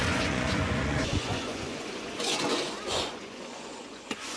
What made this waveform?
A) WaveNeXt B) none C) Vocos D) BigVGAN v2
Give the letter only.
C